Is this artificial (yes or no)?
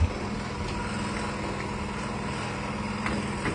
no